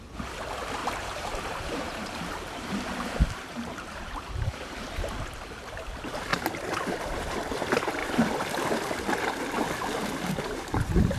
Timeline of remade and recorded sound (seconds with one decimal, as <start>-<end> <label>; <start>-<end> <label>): 0.0-0.8 recorded; 0.8-5.2 remade; 5.2-8.0 recorded; 8.0-8.5 remade; 8.5-11.2 recorded